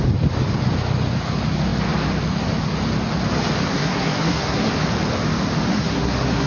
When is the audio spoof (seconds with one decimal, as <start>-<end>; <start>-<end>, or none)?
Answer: 3.7-4.7; 5.7-6.5